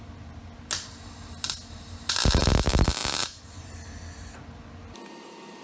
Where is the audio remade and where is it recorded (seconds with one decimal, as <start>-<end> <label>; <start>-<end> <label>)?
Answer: 0.0-5.6 recorded